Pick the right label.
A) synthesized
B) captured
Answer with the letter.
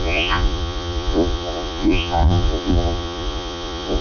A